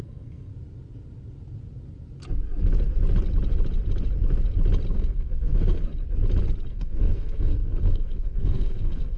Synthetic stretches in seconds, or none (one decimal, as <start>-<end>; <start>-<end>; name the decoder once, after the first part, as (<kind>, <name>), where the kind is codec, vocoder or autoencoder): 0.0-0.5 (codec, SNAC); 4.9-5.9; 6.7-9.2